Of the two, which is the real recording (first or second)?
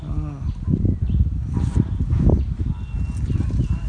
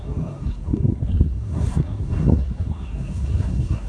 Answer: first